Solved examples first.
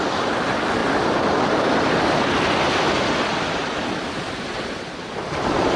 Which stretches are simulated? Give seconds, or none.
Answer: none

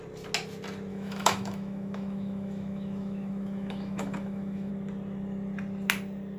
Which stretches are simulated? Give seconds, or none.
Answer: 0.9-4.7 (autoencoder, DAC-VAE)

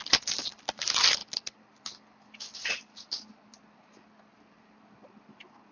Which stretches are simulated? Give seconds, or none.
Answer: none

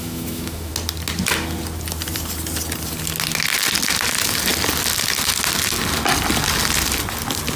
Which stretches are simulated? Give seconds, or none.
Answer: 0.0-0.7 (autoencoder, DAC-VAE)

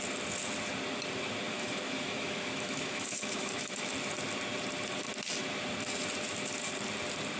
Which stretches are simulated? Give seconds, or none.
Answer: 1.5-3.9 (autoencoder, DAC-VAE)

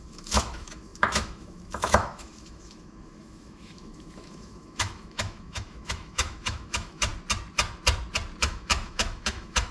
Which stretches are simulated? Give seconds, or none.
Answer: 0.0-7.1 (autoencoder, DAC-VAE); 8.4-9.7

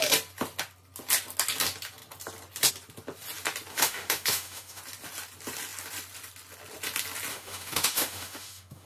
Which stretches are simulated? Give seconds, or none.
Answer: 3.7-4.8 (autoencoder, DAC-VAE); 7.3-8.9

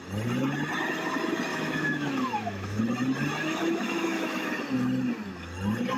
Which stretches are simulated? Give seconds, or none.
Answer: 1.5-2.8 (autoencoder, DAC-VAE); 3.4-4.5